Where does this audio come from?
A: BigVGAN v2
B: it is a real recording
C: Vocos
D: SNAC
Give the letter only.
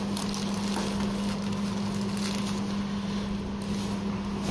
B